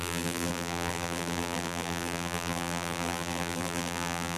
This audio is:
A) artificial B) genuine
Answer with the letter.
A